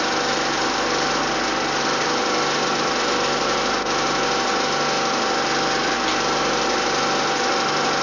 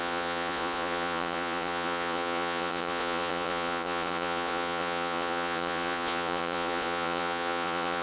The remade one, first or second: second